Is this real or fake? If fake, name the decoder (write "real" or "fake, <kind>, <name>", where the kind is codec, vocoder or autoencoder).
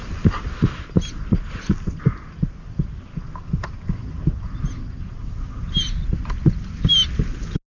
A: real